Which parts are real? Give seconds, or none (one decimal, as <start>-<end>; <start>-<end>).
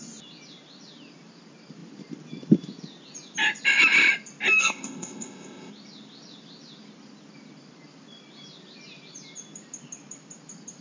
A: 0.0-4.6; 5.7-10.8